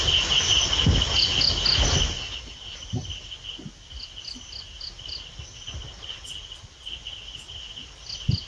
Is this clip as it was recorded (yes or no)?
yes